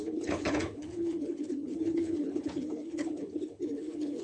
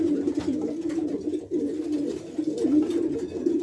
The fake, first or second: first